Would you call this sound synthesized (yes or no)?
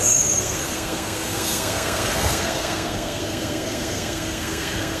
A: yes